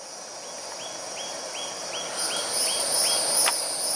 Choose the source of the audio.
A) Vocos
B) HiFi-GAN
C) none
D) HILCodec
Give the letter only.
C